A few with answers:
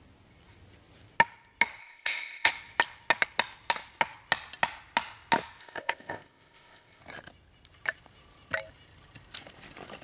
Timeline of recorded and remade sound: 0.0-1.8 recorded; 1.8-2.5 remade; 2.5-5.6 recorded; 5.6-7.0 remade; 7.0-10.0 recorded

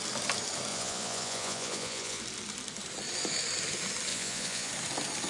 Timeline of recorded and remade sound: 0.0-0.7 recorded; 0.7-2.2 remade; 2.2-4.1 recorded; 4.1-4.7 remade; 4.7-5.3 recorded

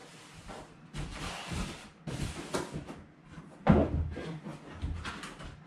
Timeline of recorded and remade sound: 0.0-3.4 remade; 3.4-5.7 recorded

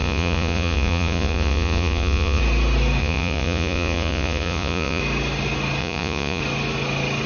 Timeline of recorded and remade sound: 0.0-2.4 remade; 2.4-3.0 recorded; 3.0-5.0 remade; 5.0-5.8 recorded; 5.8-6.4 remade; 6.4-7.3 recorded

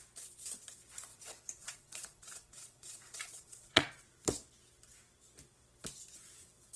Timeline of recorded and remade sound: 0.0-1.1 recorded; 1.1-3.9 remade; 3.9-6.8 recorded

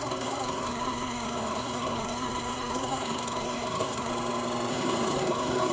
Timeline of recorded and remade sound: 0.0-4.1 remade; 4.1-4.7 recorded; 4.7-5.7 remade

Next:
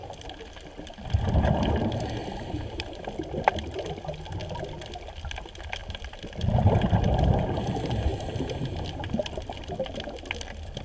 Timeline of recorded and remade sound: 0.0-2.2 recorded; 2.2-3.0 remade; 3.0-5.8 recorded; 5.8-6.8 remade; 6.8-10.8 recorded

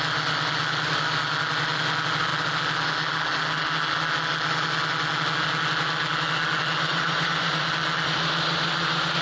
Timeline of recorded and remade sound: 0.0-6.9 recorded; 6.9-7.6 remade; 7.6-9.2 recorded